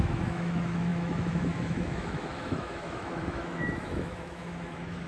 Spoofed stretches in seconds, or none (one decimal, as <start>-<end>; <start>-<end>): 0.0-5.1